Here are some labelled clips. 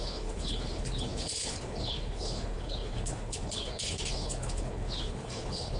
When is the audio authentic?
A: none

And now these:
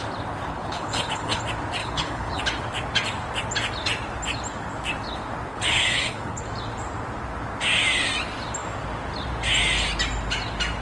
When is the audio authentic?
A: 0.0-0.5; 1.4-1.8; 2.4-5.5; 6.5-10.8

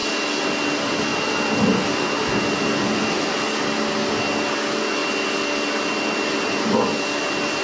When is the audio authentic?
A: 0.0-7.6

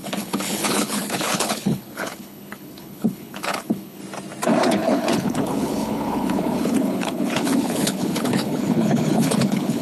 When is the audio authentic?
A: 4.0-4.6

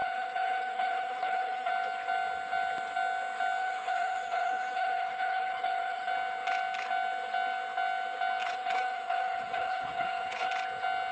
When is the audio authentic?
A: 1.7-3.6; 6.1-8.4; 10.5-11.1

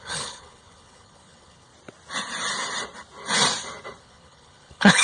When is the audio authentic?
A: 1.7-4.0